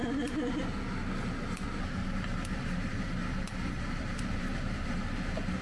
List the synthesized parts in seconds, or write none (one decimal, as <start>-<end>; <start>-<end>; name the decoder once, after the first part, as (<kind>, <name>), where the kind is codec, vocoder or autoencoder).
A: 1.8-3.2 (vocoder, BigVGAN v2); 4.2-5.6